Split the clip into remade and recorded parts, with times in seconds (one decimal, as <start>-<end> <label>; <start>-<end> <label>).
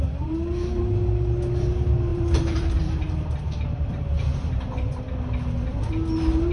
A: 0.0-2.1 recorded; 2.1-5.0 remade; 5.0-6.5 recorded